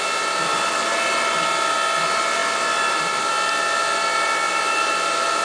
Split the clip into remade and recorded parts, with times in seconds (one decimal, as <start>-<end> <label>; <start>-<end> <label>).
0.0-5.4 recorded